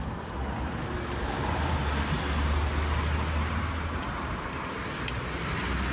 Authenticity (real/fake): real